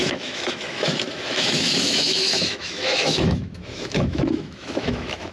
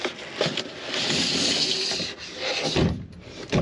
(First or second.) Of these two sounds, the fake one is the first